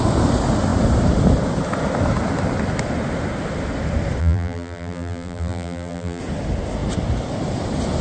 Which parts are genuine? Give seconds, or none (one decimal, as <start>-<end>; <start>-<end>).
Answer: 0.0-4.2; 6.2-8.0